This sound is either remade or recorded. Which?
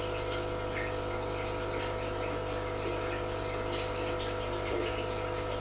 recorded